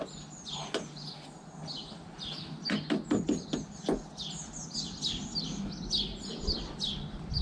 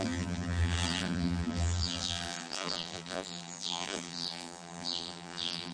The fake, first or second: second